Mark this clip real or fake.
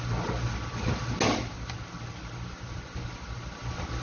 real